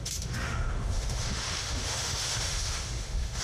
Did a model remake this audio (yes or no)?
yes